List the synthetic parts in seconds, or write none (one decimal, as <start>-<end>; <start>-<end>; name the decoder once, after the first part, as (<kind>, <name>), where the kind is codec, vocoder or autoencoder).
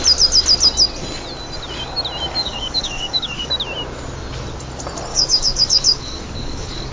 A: 2.4-3.5 (codec, DAC); 5.1-6.9